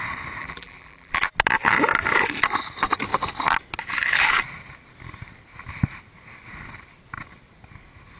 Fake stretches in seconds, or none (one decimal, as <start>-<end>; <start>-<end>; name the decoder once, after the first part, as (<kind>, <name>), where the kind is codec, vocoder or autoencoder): 0.4-1.3 (vocoder, BigVGAN v2)